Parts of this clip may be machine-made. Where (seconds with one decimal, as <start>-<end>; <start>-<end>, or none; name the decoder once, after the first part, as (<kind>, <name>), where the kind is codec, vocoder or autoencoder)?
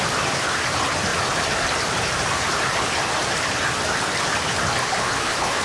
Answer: 4.8-5.6 (codec, HILCodec)